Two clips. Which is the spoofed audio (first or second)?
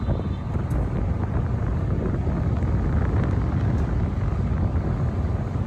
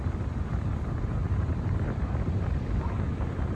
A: second